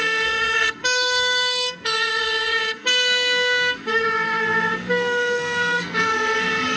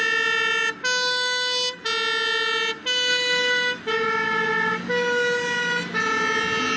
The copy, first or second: first